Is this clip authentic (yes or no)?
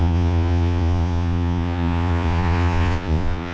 no